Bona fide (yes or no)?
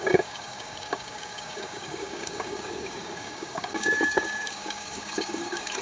no